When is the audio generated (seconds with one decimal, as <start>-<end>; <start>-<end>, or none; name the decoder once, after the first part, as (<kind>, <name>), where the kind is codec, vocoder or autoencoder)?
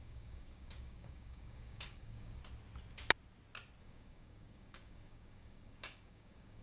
0.0-2.4 (codec, DAC); 3.8-6.6